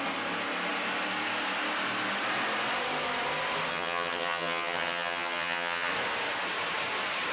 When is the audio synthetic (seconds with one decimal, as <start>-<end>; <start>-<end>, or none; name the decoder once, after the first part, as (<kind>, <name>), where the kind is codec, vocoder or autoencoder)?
3.7-5.9 (vocoder, HiFi-GAN)